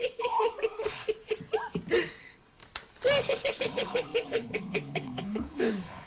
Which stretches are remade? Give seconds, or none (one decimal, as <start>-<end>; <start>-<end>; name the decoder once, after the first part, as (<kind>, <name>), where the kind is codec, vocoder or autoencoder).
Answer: 0.0-1.0 (codec, HILCodec); 2.2-2.6; 3.2-6.1